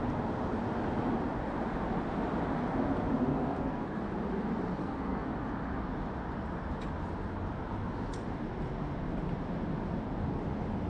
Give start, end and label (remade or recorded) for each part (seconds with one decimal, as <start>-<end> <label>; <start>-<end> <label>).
0.0-3.3 recorded; 3.3-4.0 remade; 4.0-4.8 recorded; 4.8-5.3 remade; 5.3-10.9 recorded